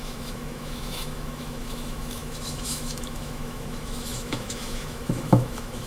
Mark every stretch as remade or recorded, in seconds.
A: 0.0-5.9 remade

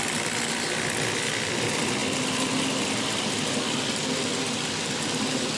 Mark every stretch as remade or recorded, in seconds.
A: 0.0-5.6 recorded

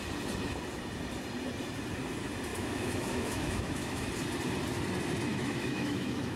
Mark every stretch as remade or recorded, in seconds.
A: 0.0-2.5 recorded; 2.5-4.1 remade; 4.1-5.3 recorded; 5.3-6.4 remade

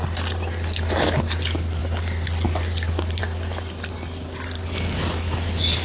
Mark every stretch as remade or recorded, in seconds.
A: 0.0-5.8 recorded